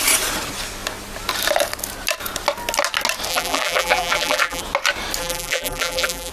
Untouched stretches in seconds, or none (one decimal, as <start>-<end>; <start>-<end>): 0.0-3.3; 4.6-5.2